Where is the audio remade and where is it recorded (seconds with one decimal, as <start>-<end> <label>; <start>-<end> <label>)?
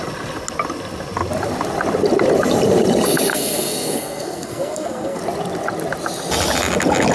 0.0-3.3 recorded; 3.3-5.2 remade; 5.2-7.1 recorded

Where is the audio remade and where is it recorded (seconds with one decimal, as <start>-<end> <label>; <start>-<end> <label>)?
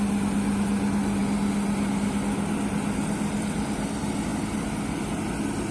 0.0-5.7 recorded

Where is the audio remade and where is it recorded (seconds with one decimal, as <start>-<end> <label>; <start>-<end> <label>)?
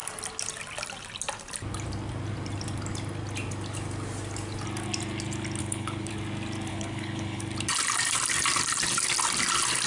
0.0-5.6 recorded; 5.6-6.1 remade; 6.1-6.7 recorded; 6.7-7.4 remade; 7.4-9.9 recorded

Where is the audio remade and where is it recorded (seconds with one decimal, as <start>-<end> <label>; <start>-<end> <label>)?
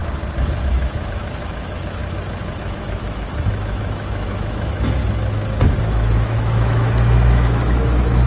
0.0-0.7 recorded; 0.7-2.0 remade; 2.0-2.6 recorded; 2.6-5.0 remade; 5.0-5.8 recorded; 5.8-8.3 remade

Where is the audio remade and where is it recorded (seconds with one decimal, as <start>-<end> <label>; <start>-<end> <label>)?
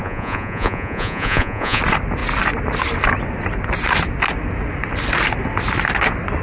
0.0-1.8 remade; 1.8-6.4 recorded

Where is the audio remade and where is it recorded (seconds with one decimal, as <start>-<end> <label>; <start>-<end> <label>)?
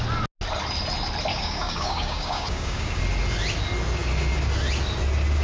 0.0-1.3 recorded; 1.3-3.0 remade; 3.0-5.4 recorded